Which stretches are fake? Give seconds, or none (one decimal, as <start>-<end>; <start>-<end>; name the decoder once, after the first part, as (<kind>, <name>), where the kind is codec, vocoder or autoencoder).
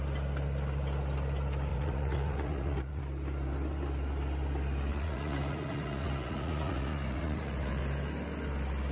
1.7-3.0 (vocoder, Vocos); 4.9-7.8